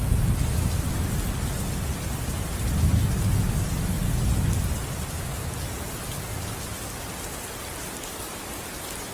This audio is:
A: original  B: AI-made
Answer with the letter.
A